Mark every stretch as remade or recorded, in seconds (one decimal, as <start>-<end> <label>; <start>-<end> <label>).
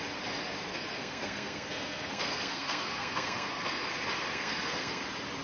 0.0-0.7 recorded; 0.7-3.9 remade; 3.9-4.3 recorded; 4.3-5.0 remade; 5.0-5.4 recorded